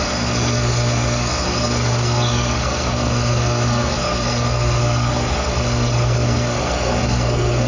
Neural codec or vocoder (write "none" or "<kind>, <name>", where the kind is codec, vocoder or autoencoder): codec, SNAC